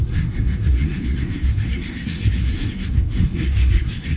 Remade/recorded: remade